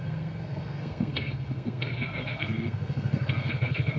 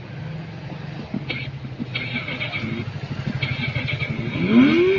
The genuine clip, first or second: second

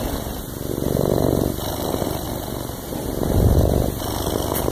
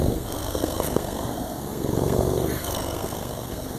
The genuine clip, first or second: first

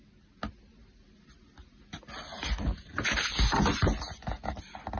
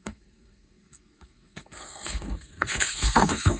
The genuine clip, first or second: first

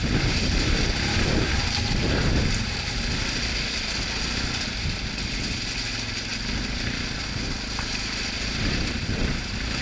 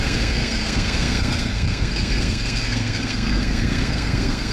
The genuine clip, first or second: first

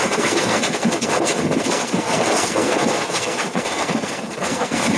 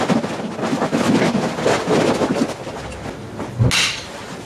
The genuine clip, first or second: second